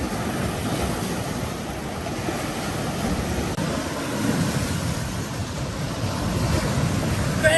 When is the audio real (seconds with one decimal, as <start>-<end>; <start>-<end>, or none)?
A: 0.0-7.6